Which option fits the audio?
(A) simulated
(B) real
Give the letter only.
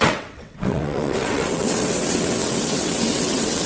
A